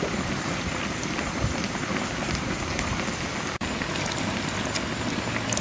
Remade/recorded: recorded